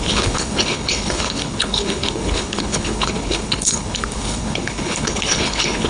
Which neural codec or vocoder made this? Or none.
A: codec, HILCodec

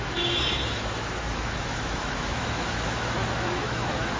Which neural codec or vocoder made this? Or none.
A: autoencoder, DAC-VAE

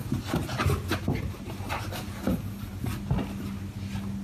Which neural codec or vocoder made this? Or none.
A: none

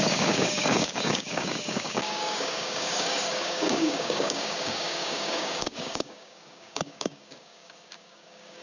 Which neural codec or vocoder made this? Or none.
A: codec, DAC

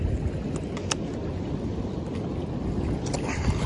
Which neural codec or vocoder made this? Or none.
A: none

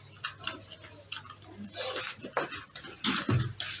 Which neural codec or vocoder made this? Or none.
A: none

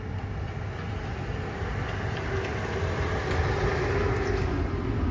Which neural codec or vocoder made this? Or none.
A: none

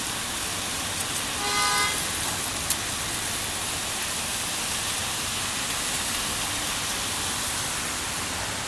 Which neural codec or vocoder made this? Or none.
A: none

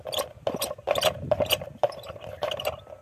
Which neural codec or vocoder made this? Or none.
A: none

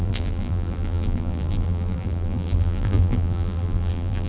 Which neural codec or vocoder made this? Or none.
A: vocoder, BigVGAN v2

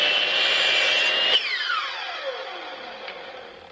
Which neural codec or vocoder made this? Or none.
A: none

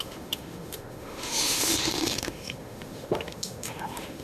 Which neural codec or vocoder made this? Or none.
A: autoencoder, DAC-VAE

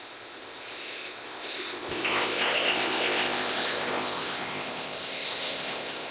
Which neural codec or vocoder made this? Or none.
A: codec, ZipCodec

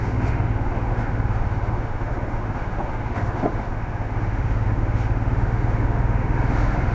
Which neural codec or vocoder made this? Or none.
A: autoencoder, DAC-VAE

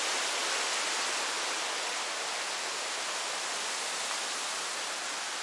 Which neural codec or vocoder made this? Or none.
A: none